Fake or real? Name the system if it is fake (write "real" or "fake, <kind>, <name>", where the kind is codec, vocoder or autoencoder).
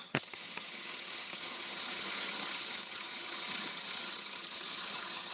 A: fake, vocoder, HiFi-GAN